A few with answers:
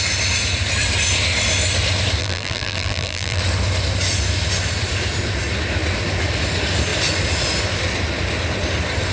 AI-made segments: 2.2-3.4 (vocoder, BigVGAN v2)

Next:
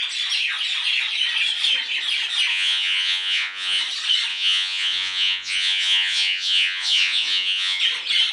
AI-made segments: 2.5-3.8 (vocoder, Vocos); 4.3-7.8

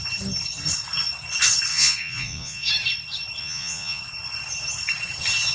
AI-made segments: 1.7-2.7 (vocoder, Vocos); 3.4-4.0

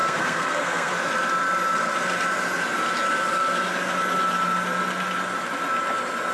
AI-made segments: 0.0-0.9 (codec, SNAC)

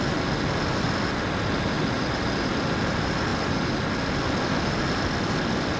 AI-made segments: none

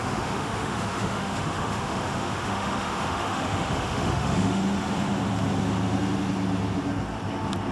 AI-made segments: 0.0-4.6 (autoencoder, DAC-VAE)

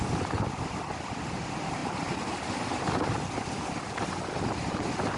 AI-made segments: 0.0-1.8 (vocoder, BigVGAN v2)

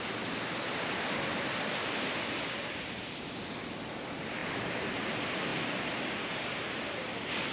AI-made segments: none